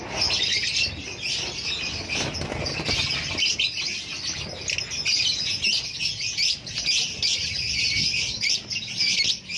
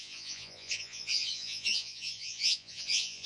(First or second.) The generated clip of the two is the second